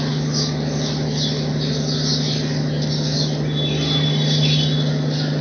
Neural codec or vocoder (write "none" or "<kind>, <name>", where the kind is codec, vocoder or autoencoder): none